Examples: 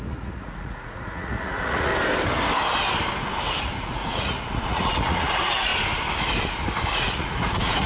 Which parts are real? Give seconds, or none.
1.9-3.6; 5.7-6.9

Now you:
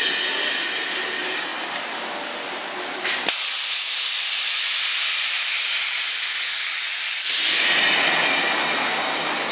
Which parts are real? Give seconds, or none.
0.0-9.5

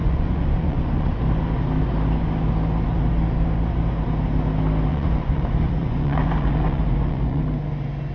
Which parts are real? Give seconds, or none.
1.2-4.9; 7.4-8.1

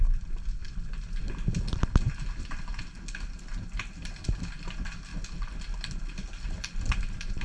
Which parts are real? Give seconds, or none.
0.0-7.4

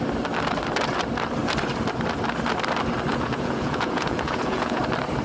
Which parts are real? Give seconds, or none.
0.0-3.1; 4.8-5.2

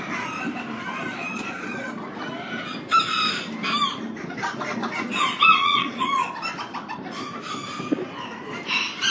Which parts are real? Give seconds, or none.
0.0-1.1; 2.0-4.5; 6.3-9.1